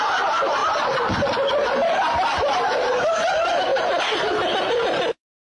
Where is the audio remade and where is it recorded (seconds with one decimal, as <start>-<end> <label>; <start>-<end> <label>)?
0.0-5.5 recorded